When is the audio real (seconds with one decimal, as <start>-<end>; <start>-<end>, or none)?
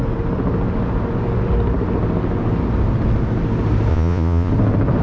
0.0-3.9; 4.5-5.0